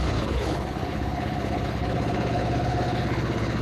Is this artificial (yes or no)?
yes